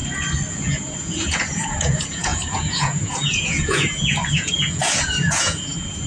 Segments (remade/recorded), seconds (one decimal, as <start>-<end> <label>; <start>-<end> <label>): 0.0-0.5 recorded; 0.5-6.1 remade